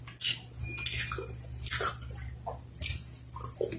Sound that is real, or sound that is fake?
real